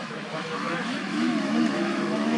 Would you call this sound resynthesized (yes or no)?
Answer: yes